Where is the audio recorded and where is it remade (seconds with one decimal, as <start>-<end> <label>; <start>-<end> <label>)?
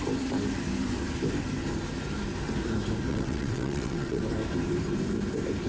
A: 0.0-3.1 recorded; 3.1-4.2 remade; 4.2-5.7 recorded